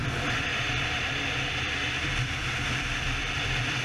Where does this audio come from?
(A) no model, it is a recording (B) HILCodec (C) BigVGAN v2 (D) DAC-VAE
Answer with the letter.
C